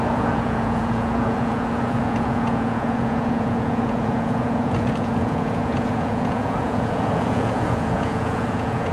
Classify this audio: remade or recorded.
remade